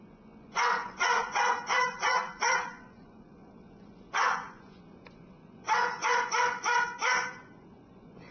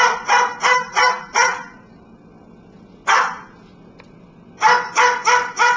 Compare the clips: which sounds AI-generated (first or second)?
first